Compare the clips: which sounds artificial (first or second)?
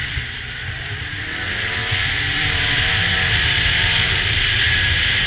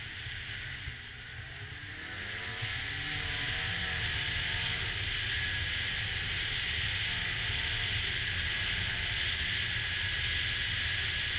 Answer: first